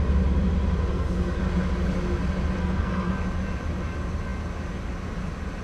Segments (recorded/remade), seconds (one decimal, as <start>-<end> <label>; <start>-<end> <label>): 0.0-0.9 recorded; 0.9-1.4 remade; 1.4-2.6 recorded; 2.6-3.1 remade; 3.1-5.6 recorded